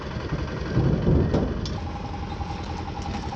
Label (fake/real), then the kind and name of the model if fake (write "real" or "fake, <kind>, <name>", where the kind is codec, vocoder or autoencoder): real